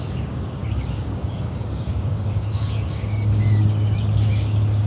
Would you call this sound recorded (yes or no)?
no